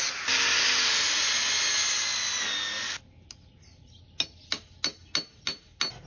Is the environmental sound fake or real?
real